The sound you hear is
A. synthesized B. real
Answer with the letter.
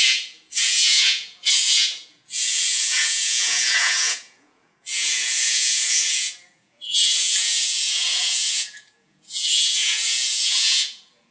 A